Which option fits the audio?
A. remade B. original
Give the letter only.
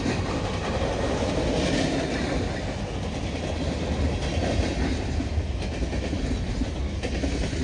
B